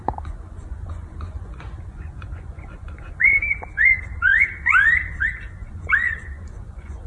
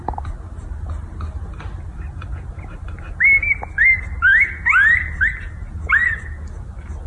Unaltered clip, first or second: second